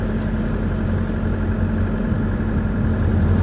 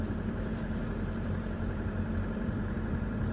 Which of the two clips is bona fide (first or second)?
first